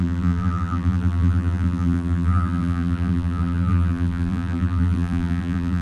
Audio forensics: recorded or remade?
remade